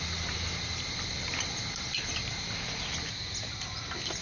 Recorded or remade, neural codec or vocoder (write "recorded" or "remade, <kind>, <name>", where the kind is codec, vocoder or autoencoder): recorded